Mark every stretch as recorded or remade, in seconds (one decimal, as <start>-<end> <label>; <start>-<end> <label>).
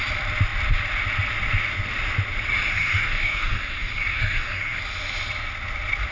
0.0-2.7 recorded; 2.7-4.8 remade; 4.8-6.1 recorded